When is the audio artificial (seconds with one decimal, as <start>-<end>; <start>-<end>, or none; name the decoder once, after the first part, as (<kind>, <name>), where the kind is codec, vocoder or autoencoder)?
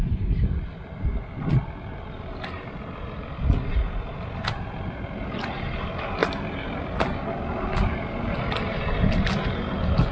none